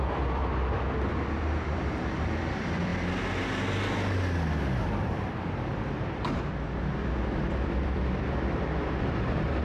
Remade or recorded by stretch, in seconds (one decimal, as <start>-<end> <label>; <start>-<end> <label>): 0.0-0.4 remade; 0.4-1.7 recorded; 1.7-2.9 remade; 2.9-4.8 recorded; 4.8-9.6 remade